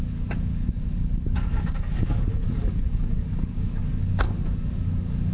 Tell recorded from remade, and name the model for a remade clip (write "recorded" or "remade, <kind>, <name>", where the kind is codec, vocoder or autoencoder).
remade, codec, DAC